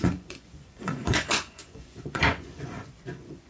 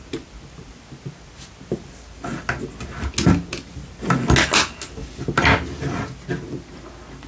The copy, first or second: first